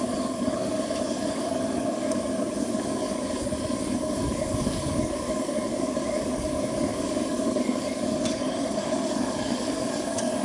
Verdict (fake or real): fake